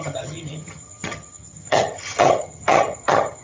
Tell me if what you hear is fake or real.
fake